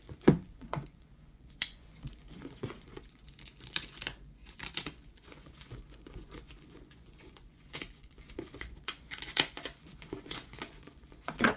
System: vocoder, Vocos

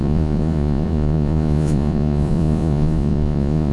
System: vocoder, Vocos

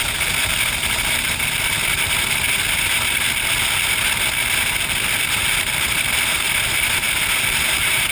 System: none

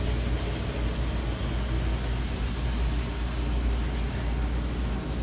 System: none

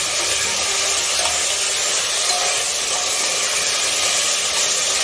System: none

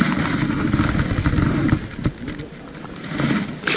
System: none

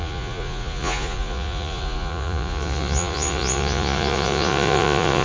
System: vocoder, Vocos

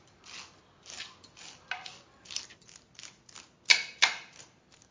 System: none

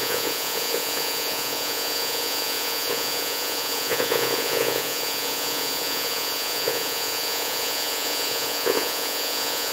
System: vocoder, Vocos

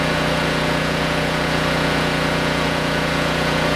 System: vocoder, Vocos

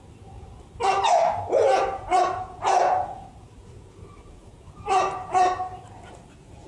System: none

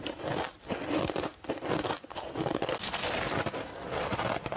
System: none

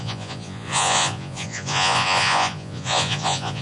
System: vocoder, Vocos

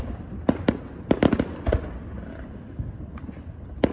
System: none